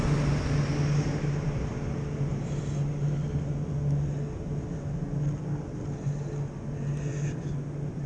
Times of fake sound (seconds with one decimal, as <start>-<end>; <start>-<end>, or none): none